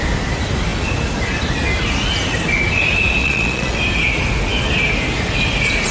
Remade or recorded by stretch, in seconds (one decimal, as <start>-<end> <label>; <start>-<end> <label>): 0.0-3.2 recorded; 3.2-3.8 remade; 3.8-5.9 recorded